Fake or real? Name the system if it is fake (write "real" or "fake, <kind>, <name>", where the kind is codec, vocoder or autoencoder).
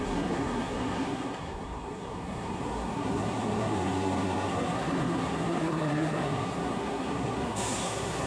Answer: fake, codec, SNAC